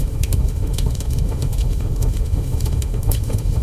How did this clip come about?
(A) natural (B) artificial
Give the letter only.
B